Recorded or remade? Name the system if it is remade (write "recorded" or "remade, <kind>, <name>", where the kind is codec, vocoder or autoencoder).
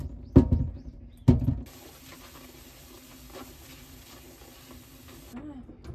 recorded